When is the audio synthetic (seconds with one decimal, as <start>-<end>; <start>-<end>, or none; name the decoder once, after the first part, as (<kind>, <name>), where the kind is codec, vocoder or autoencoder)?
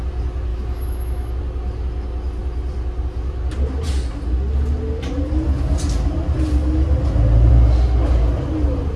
0.5-1.3 (autoencoder, DAC-VAE)